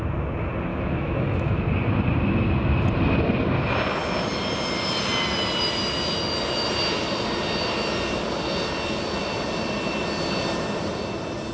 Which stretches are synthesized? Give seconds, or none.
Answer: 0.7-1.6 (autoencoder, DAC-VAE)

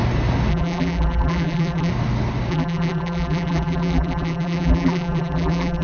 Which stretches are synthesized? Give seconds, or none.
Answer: 0.5-1.9 (vocoder, BigVGAN v2); 2.5-5.8

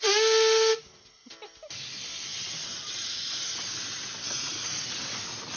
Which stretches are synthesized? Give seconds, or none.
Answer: 2.3-3.4 (vocoder, BigVGAN v2)

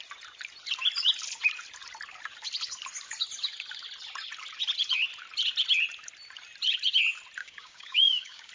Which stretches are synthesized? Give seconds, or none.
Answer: 7.4-8.5 (codec, DAC)

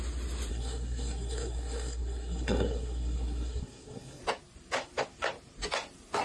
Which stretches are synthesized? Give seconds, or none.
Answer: 0.5-4.2 (codec, SNAC)

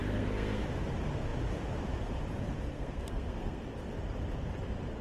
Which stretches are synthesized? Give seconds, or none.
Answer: 0.0-0.6 (codec, SNAC); 2.7-3.6

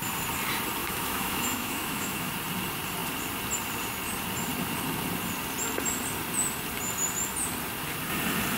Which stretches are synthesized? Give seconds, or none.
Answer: 0.8-2.3 (autoencoder, DAC-VAE)

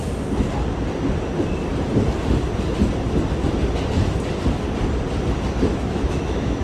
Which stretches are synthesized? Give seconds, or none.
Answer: 5.7-6.6 (autoencoder, DAC-VAE)